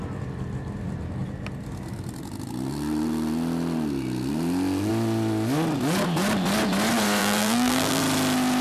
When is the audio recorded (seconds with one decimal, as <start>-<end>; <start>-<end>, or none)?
0.0-7.2; 8.0-8.6